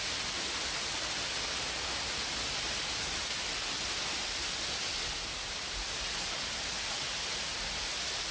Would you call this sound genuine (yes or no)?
yes